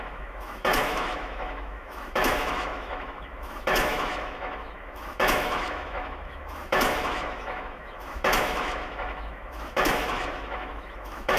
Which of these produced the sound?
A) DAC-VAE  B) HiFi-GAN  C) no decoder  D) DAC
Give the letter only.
A